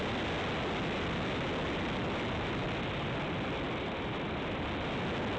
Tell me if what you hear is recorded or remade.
recorded